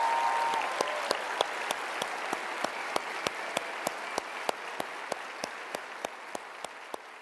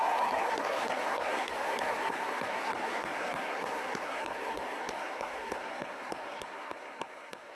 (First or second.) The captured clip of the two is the first